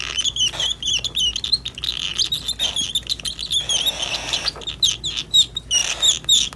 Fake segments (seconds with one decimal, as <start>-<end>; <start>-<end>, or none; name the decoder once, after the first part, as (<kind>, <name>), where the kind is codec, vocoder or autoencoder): none